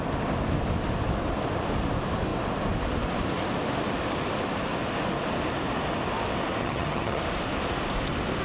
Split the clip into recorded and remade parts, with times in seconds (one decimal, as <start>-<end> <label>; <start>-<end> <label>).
0.0-6.6 recorded; 6.6-7.2 remade; 7.2-8.4 recorded